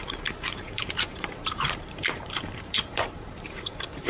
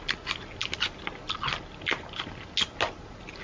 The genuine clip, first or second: second